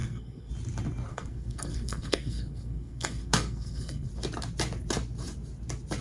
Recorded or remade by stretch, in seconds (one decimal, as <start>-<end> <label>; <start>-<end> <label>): 0.0-0.5 remade; 0.5-1.1 recorded; 1.1-4.1 remade; 4.1-6.0 recorded